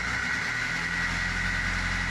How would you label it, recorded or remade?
recorded